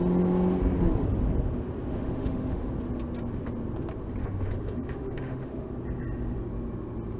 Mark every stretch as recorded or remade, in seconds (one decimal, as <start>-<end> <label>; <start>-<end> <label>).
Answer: 0.0-1.9 recorded; 1.9-2.7 remade; 2.7-4.2 recorded; 4.2-5.7 remade; 5.7-7.2 recorded